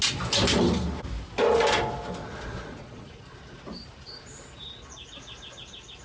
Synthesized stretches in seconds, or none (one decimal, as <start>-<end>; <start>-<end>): 2.2-3.1